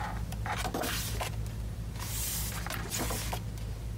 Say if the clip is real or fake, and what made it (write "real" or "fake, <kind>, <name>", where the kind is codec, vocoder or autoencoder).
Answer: real